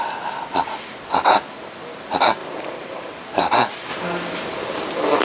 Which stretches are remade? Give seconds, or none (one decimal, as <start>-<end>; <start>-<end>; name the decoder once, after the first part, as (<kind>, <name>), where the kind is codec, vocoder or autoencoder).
2.4-3.4 (vocoder, BigVGAN v2); 3.9-5.2